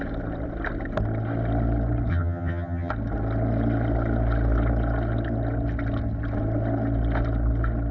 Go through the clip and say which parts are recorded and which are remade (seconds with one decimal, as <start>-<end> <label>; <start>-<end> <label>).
0.0-2.1 recorded; 2.1-2.9 remade; 2.9-7.9 recorded